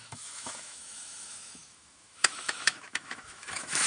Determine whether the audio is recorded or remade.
remade